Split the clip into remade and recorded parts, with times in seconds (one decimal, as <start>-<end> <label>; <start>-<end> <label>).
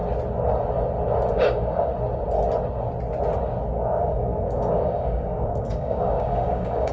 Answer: 0.0-1.3 recorded; 1.3-1.9 remade; 1.9-3.7 recorded; 3.7-6.9 remade